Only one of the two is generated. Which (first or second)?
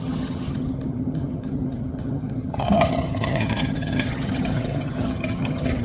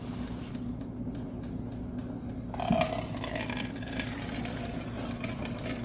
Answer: first